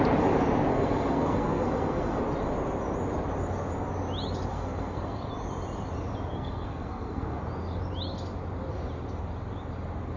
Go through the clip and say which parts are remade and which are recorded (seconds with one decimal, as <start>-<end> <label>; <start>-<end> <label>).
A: 0.0-0.7 recorded; 0.7-2.2 remade; 2.2-4.5 recorded; 4.5-5.2 remade; 5.2-6.3 recorded; 6.3-7.4 remade; 7.4-10.2 recorded